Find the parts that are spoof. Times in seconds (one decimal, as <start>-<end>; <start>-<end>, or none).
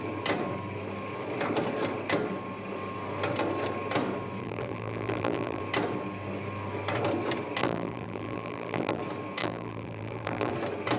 4.4-5.6; 7.6-9.0; 9.4-10.5